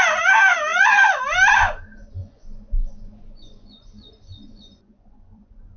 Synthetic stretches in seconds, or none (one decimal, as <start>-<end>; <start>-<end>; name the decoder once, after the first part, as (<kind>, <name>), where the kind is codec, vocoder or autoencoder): 0.7-1.2 (vocoder, Vocos); 2.2-5.8